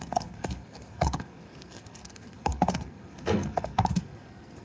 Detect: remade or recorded remade